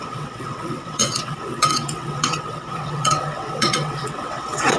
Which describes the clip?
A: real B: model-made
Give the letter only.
B